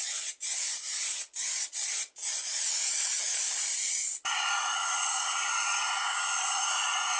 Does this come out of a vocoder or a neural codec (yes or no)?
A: yes